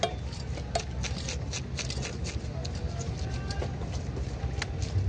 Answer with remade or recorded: recorded